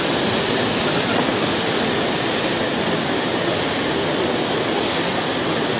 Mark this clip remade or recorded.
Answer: recorded